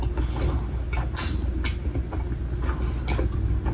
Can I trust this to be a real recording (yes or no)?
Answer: yes